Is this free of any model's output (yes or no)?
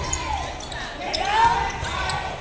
yes